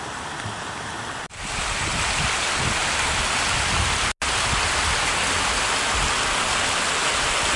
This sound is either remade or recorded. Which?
recorded